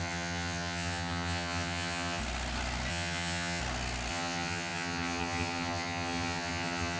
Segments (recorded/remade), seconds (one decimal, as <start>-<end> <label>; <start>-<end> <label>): 0.0-2.2 remade; 2.2-2.9 recorded; 2.9-3.6 remade; 3.6-4.1 recorded; 4.1-7.0 remade